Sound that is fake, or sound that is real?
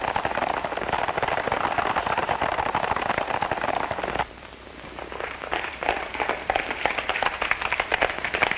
fake